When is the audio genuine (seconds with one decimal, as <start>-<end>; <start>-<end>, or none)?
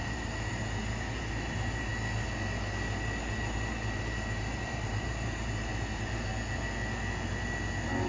1.9-3.2; 6.3-8.1